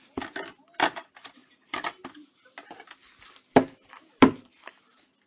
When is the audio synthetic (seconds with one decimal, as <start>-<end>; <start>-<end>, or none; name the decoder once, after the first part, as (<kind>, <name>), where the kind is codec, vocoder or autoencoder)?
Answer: none